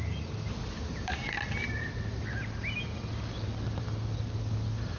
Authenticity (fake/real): real